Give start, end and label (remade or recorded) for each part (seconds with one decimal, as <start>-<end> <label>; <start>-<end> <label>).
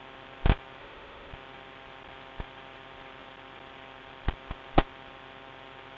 0.0-0.8 recorded; 0.8-1.3 remade; 1.3-6.0 recorded